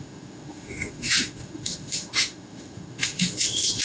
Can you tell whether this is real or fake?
fake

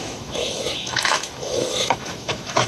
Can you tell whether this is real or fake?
fake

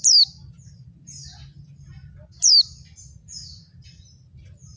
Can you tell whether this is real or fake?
real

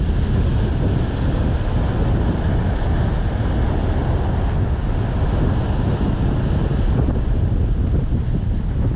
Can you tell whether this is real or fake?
real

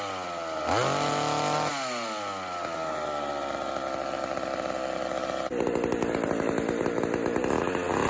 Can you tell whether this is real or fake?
real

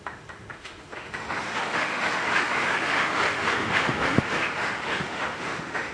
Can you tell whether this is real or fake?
fake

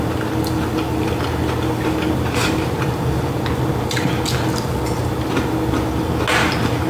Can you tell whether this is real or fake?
real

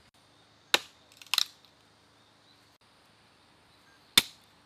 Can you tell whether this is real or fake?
real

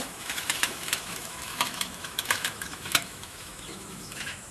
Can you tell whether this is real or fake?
fake